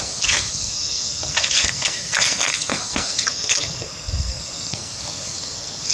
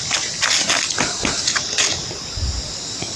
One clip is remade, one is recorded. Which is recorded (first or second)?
second